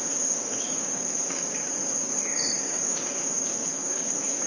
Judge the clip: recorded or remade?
remade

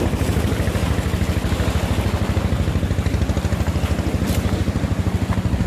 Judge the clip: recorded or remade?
recorded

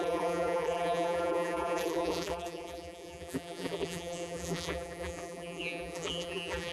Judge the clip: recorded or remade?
remade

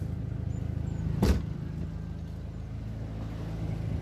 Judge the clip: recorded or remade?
recorded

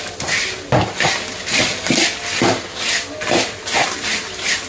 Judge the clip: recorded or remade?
recorded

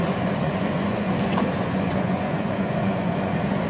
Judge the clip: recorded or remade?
remade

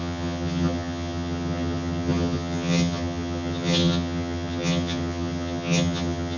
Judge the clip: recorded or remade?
remade